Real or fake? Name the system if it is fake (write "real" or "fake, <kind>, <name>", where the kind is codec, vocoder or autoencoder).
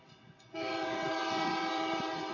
fake, vocoder, WaveNeXt